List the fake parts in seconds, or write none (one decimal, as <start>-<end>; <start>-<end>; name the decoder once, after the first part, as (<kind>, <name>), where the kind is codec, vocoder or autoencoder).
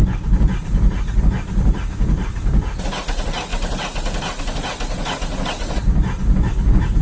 none